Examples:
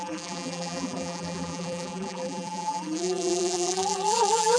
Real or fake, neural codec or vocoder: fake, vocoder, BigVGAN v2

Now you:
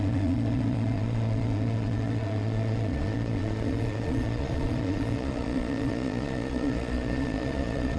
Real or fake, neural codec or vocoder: fake, vocoder, Vocos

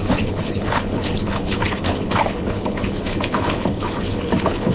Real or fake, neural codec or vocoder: fake, codec, HILCodec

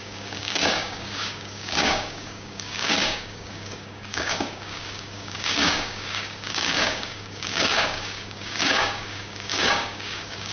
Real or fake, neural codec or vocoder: fake, codec, DAC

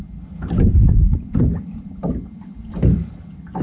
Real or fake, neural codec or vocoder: real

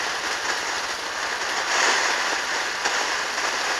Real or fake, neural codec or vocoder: real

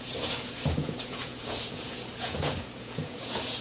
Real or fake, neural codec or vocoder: fake, vocoder, Vocos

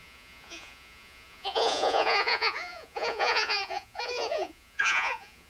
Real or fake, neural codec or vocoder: fake, vocoder, Vocos